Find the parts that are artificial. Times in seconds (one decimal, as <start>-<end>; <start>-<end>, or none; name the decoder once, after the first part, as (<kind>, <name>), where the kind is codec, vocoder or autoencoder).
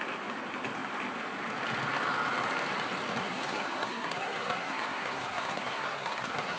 3.2-6.6 (codec, SNAC)